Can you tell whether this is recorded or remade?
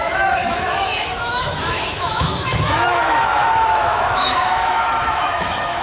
remade